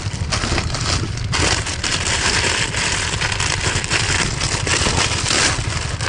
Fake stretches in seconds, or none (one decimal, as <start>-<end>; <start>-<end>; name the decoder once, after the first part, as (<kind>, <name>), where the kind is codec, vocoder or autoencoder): none